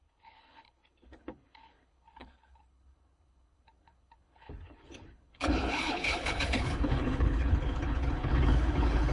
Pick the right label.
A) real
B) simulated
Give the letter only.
B